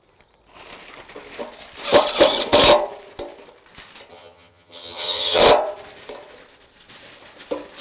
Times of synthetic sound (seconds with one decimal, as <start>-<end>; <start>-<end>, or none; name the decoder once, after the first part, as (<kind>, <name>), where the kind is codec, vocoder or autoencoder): 4.1-5.4 (vocoder, HiFi-GAN)